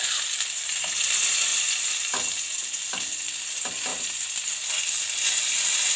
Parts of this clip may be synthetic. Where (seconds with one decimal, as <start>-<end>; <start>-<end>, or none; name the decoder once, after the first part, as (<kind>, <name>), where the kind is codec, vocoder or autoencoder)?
none